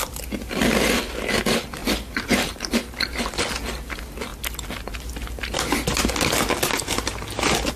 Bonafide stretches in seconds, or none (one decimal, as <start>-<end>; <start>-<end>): 0.0-1.8; 3.0-7.8